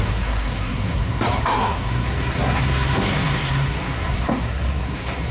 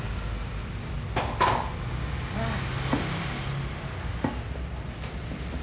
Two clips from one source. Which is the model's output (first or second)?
first